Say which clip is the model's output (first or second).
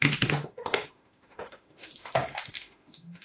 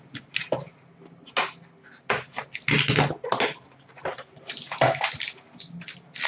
first